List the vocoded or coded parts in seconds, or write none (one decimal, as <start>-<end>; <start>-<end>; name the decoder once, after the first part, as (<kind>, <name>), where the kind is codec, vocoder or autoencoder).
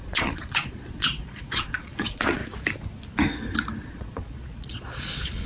0.0-2.4 (vocoder, Vocos); 3.9-5.5